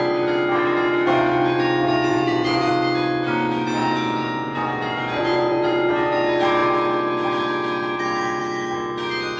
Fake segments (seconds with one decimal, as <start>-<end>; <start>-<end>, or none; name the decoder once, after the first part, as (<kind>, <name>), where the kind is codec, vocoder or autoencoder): 2.1-2.7 (vocoder, Vocos); 3.8-5.9